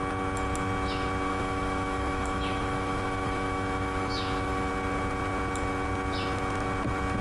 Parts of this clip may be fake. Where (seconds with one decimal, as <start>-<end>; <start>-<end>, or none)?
1.3-4.7